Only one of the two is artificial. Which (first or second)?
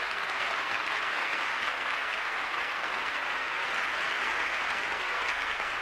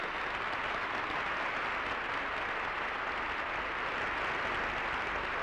first